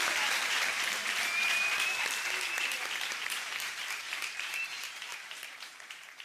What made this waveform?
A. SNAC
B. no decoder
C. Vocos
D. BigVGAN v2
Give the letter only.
D